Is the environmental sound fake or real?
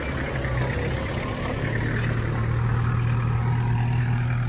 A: real